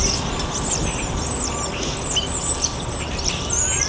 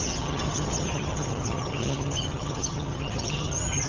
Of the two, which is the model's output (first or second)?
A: second